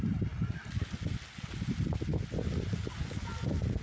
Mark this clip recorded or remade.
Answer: recorded